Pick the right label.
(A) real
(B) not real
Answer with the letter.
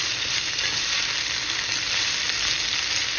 A